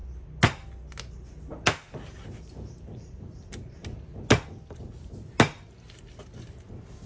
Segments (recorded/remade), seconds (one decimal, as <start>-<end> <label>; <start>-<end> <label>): 0.0-7.1 recorded